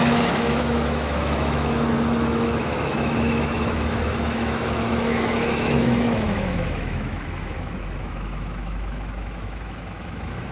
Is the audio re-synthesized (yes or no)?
yes